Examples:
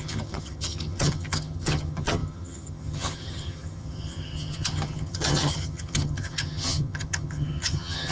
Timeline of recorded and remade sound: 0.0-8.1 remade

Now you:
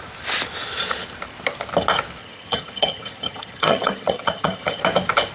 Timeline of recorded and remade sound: 0.0-2.2 recorded; 2.2-4.8 remade; 4.8-5.3 recorded

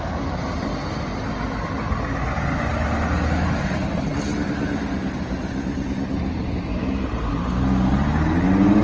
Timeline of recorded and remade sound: 0.0-8.8 recorded

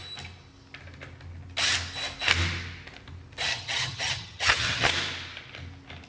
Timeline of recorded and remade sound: 0.0-3.5 recorded; 3.5-4.9 remade; 4.9-6.1 recorded

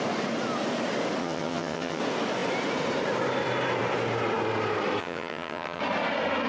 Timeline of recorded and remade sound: 0.0-1.2 recorded; 1.2-2.0 remade; 2.0-5.0 recorded; 5.0-5.8 remade; 5.8-6.5 recorded

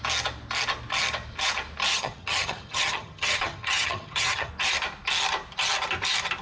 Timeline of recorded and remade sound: 0.0-1.9 recorded; 1.9-4.5 remade; 4.5-6.4 recorded

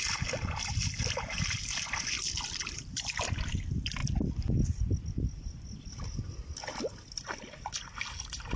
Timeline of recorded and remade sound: 0.0-8.6 recorded